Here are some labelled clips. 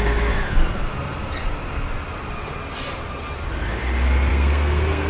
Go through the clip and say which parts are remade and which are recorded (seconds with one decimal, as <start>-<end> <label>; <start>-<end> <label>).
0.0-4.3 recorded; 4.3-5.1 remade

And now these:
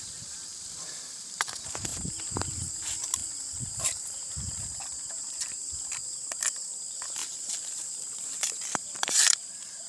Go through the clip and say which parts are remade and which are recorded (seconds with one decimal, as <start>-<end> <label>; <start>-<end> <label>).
0.0-3.2 remade; 3.2-3.8 recorded; 3.8-9.9 remade

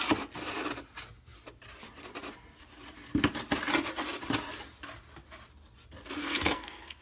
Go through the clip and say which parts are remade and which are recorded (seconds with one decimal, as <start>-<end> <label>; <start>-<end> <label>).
0.0-6.2 recorded; 6.2-7.0 remade

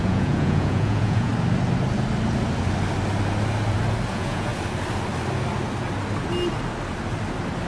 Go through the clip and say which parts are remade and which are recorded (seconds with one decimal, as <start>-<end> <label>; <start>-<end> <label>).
0.0-1.3 remade; 1.3-4.1 recorded; 4.1-4.5 remade; 4.5-7.7 recorded

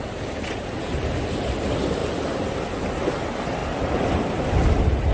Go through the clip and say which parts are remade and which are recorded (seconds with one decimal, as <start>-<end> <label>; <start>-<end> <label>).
0.0-5.1 recorded

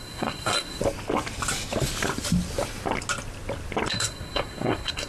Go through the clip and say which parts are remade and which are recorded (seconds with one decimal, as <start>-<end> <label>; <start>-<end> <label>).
0.0-0.8 remade; 0.8-3.9 recorded; 3.9-5.1 remade

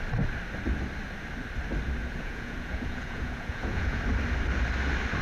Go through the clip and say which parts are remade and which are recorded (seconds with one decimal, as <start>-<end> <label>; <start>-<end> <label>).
0.0-2.0 recorded; 2.0-4.0 remade; 4.0-5.2 recorded